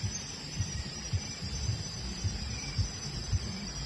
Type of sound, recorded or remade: remade